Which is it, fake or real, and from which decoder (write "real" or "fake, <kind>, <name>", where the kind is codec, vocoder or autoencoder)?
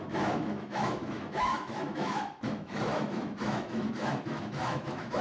fake, autoencoder, DAC-VAE